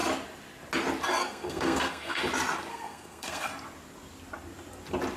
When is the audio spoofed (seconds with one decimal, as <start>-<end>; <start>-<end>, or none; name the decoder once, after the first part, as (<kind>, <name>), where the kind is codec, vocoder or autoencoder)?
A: 1.2-2.2 (codec, SNAC); 2.7-3.5